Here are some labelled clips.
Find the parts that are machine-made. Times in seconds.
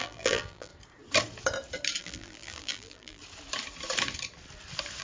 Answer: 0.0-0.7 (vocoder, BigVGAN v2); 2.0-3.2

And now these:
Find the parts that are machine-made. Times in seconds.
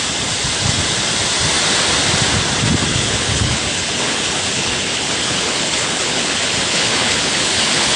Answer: 2.9-8.0 (codec, HILCodec)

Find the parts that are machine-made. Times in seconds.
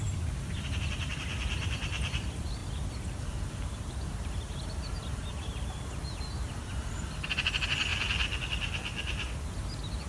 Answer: 0.0-1.1 (vocoder, BigVGAN v2); 2.1-7.9; 9.4-10.1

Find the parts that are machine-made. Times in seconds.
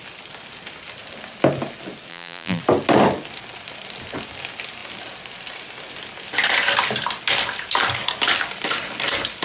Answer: 2.1-2.6 (vocoder, BigVGAN v2)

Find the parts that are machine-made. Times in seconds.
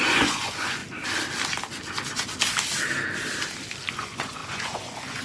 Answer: 0.0-0.8 (vocoder, Vocos); 3.9-5.2